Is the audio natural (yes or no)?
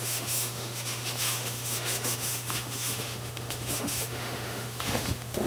no